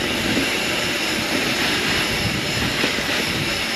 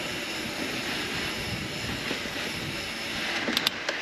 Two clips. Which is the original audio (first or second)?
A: second